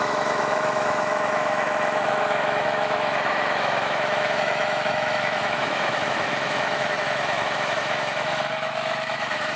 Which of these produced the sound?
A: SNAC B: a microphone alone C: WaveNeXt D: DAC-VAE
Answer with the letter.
D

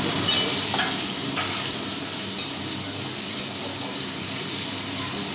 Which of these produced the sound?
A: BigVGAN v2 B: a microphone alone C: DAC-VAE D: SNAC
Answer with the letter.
B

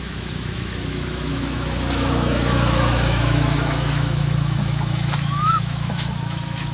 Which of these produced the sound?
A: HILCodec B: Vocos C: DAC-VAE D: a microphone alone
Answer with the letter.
C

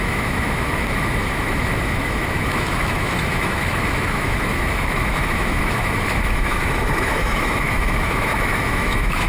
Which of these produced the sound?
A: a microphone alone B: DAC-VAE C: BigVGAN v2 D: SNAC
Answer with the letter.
B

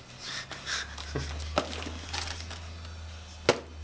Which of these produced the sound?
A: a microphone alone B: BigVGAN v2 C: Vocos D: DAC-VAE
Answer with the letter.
A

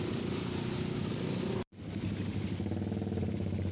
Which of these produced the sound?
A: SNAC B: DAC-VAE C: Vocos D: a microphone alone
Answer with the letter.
D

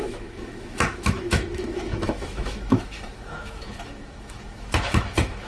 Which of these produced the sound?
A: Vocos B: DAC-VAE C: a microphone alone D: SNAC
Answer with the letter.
B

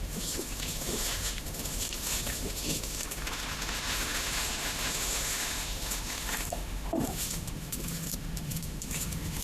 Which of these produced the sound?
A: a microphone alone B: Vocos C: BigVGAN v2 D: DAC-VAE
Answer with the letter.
D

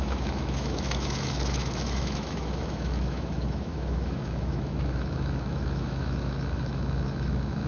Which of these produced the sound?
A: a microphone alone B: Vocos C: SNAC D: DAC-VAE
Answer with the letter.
D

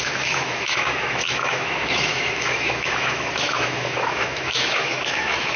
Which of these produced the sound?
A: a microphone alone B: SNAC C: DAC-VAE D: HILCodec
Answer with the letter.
C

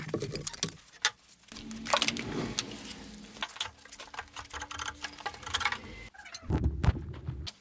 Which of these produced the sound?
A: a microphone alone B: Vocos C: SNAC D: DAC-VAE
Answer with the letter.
A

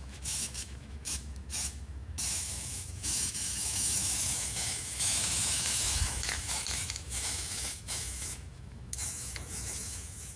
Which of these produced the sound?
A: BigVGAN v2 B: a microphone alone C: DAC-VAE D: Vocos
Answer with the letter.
C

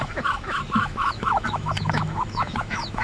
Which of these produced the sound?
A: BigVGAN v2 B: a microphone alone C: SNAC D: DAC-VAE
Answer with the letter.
D